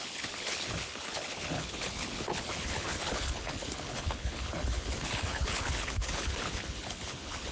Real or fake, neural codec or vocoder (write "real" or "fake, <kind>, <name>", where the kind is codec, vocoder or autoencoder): fake, codec, HILCodec